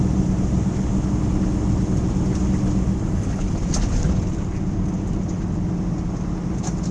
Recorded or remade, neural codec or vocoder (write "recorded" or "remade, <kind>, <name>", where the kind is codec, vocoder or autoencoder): recorded